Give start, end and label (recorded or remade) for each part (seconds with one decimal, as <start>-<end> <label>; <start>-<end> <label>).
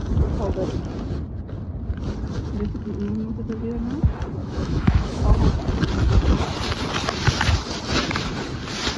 0.0-4.4 recorded; 4.4-5.3 remade; 5.3-9.0 recorded